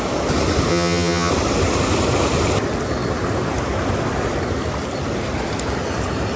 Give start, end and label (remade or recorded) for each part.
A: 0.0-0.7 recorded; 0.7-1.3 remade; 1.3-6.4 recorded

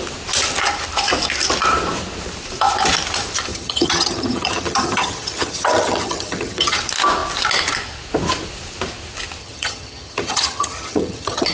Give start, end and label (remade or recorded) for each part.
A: 0.0-3.5 recorded; 3.5-6.8 remade; 6.8-9.4 recorded; 9.4-11.5 remade